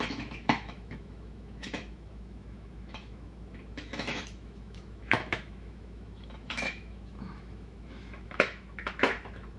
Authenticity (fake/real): fake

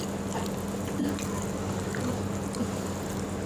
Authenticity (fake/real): real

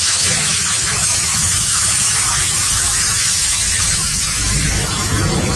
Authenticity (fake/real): fake